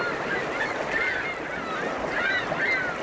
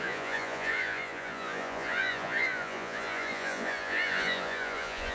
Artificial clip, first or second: second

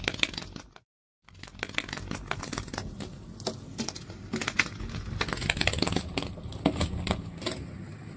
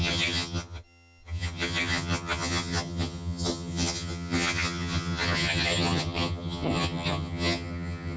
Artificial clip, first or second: second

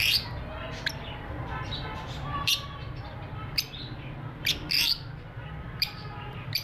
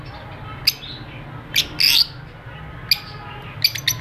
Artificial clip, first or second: first